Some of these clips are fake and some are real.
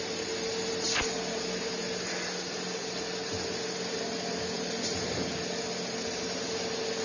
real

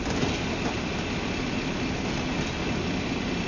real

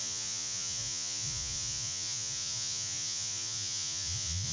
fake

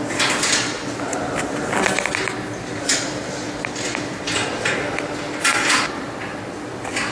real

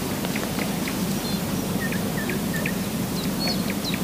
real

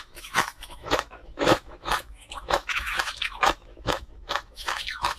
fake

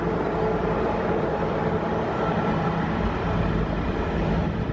fake